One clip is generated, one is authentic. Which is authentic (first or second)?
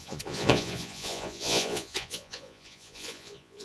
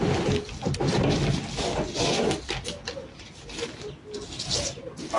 second